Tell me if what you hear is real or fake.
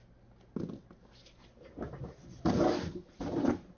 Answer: real